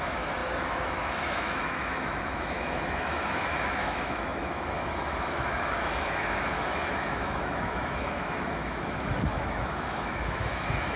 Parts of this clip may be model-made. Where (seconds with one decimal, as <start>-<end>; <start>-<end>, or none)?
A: 0.0-11.0

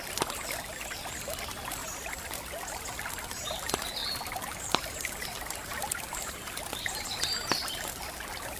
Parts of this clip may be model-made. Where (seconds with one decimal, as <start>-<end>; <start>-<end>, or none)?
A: 1.8-2.4; 4.0-6.6

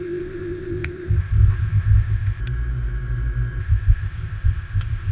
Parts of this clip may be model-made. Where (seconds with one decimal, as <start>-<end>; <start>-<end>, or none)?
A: 0.0-2.4; 3.6-5.1

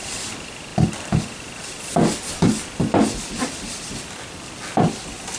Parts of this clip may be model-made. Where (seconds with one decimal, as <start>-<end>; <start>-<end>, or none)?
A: none